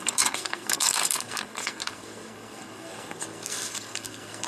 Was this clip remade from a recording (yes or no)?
yes